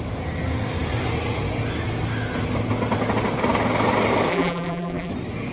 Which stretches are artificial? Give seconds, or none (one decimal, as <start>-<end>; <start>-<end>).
4.3-5.1